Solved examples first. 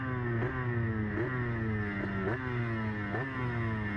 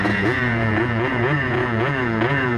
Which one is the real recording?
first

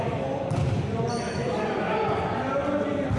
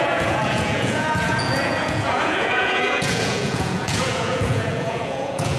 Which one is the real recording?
first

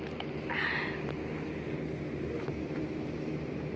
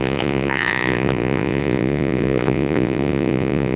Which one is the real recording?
first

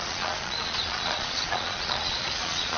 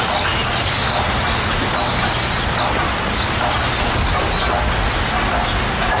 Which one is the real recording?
second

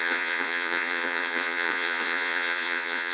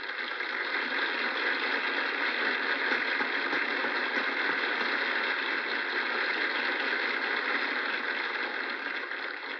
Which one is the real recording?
second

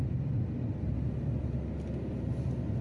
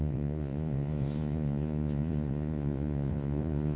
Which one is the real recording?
first